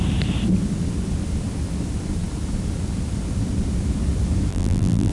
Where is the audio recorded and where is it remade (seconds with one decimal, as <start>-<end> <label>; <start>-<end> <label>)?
0.0-4.5 recorded; 4.5-5.1 remade